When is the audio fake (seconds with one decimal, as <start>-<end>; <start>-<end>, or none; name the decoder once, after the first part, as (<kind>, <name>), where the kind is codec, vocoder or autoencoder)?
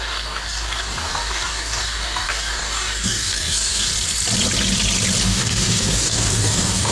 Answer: 0.0-3.9 (codec, DAC); 5.2-6.9